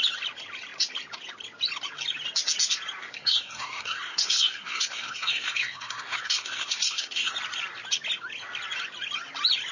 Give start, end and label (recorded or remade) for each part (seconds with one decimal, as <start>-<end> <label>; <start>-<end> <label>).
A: 0.0-3.0 recorded; 3.0-7.3 remade; 7.3-9.7 recorded

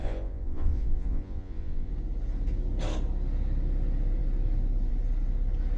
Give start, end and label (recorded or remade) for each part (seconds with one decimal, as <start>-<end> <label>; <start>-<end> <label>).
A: 0.0-1.9 remade; 1.9-5.8 recorded